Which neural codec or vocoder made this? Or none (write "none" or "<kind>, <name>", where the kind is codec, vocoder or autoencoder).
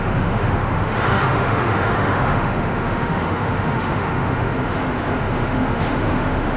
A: autoencoder, DAC-VAE